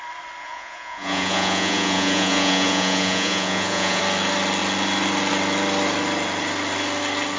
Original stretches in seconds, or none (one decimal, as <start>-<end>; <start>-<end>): 0.0-0.4; 4.0-7.4